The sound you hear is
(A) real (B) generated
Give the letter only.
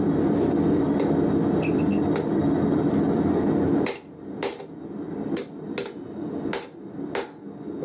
A